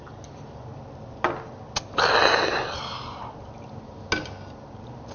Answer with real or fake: real